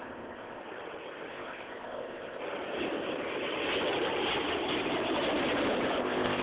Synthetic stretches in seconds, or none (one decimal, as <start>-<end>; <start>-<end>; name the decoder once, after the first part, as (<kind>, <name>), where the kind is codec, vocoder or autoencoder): 0.0-0.6 (codec, ZipCodec); 1.3-2.4; 6.0-6.4